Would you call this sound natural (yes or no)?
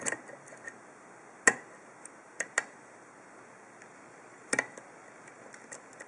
yes